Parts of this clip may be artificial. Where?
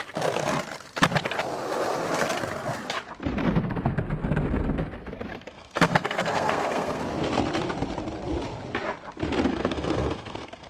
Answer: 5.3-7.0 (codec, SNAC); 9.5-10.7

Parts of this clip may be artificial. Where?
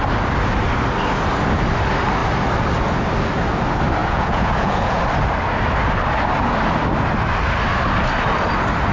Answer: 4.0-5.0 (vocoder, Vocos)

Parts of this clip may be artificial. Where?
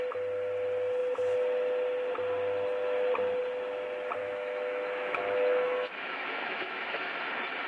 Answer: 4.2-7.1 (autoencoder, DAC-VAE)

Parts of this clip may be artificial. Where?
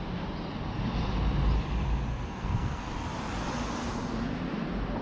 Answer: 2.1-2.8 (codec, SNAC)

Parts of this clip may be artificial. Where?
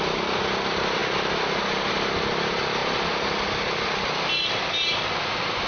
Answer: none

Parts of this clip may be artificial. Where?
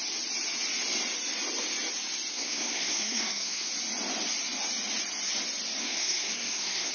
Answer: 2.3-3.7 (codec, SNAC); 5.8-6.9